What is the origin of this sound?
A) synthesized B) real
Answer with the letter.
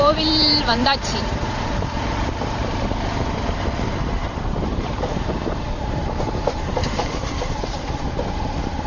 A